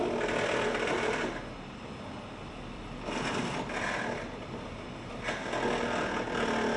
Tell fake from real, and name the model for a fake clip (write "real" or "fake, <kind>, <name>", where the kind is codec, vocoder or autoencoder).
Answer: real